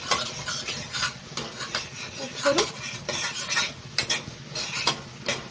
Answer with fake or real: real